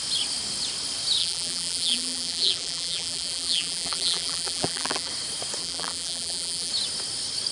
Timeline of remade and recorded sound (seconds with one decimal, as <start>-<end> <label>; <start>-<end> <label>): 0.0-1.2 recorded; 1.2-5.1 remade; 5.1-5.6 recorded; 5.6-6.7 remade; 6.7-7.5 recorded